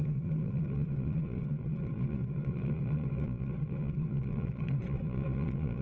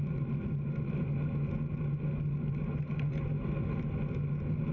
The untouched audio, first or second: second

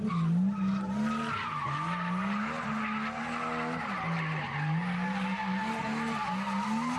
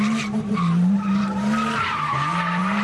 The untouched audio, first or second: first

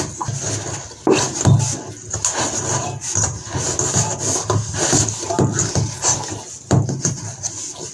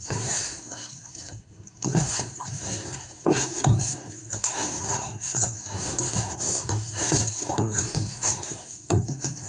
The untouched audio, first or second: first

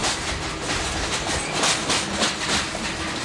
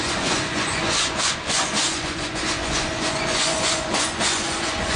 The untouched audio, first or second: first